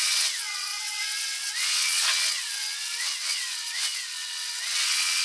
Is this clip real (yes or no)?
no